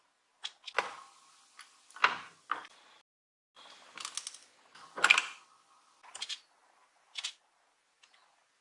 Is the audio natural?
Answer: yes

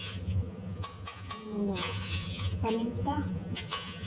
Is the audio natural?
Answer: no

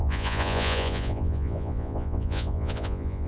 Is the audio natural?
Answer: no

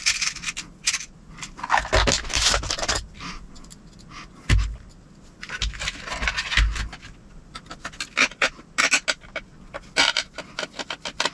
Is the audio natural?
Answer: yes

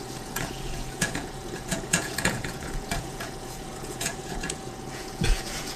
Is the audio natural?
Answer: no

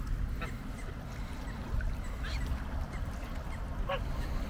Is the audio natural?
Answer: yes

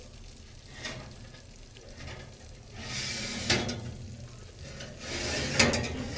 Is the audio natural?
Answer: yes